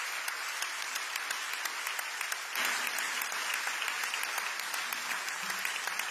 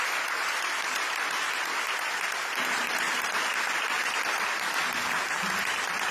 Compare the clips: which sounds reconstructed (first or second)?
second